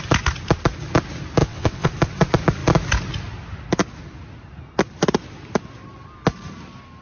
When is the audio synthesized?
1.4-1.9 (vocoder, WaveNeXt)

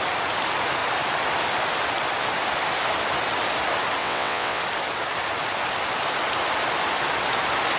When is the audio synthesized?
4.0-4.6 (vocoder, WaveNeXt)